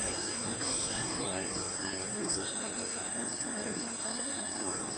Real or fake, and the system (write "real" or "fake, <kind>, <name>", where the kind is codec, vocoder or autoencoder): fake, codec, SNAC